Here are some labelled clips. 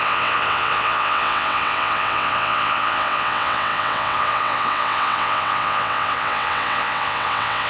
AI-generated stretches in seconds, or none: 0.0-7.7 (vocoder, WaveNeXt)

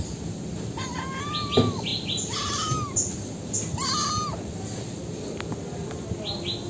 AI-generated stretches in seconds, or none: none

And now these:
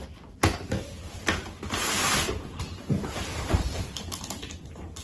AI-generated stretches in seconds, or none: 3.3-3.8 (vocoder, BigVGAN v2)